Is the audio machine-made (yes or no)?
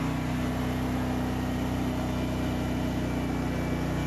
no